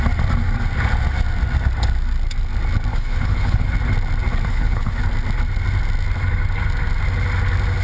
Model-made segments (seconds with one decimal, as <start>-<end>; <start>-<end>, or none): 2.9-3.7; 4.5-5.0